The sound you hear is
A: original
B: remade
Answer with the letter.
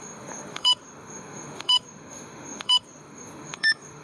B